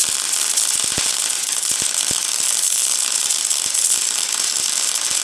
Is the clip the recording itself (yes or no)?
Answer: yes